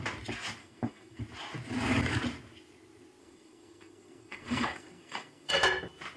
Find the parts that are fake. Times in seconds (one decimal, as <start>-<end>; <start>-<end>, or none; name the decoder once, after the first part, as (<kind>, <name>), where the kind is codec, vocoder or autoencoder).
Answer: 0.6-1.2 (codec, SNAC); 3.2-5.5